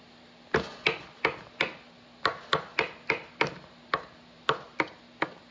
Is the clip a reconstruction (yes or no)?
no